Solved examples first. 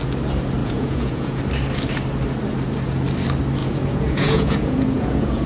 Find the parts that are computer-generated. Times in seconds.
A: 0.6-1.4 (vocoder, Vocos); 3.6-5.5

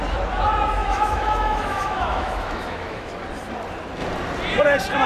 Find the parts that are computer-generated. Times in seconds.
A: 0.8-3.1 (autoencoder, DAC-VAE)

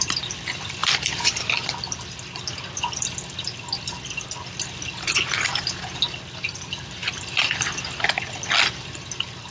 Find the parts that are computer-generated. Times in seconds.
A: 0.8-1.5 (vocoder, BigVGAN v2)

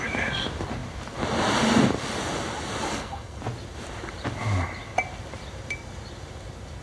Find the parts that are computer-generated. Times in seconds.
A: 2.9-3.4 (codec, SNAC)

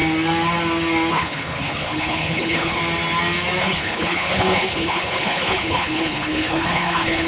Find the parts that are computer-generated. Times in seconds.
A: 1.1-2.8 (codec, HILCodec); 3.6-7.3

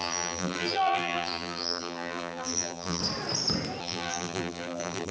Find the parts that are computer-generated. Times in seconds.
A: 0.0-3.0 (vocoder, BigVGAN v2); 3.8-5.1

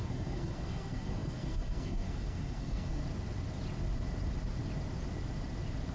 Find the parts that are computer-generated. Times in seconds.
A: 0.0-3.0 (codec, SNAC)